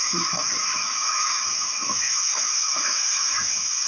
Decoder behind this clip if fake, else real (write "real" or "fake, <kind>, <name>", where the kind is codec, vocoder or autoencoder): fake, autoencoder, DAC-VAE